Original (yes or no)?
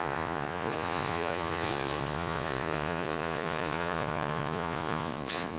no